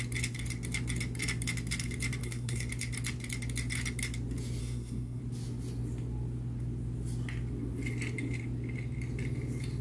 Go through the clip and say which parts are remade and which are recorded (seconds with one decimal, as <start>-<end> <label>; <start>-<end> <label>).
0.0-2.2 recorded; 2.2-2.7 remade; 2.7-4.6 recorded; 4.6-5.2 remade; 5.2-9.8 recorded

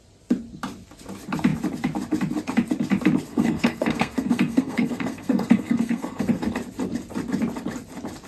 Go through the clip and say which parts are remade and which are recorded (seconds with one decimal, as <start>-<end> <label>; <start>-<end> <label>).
0.0-3.3 recorded; 3.3-6.5 remade; 6.5-8.3 recorded